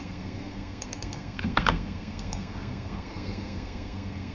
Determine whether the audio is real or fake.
fake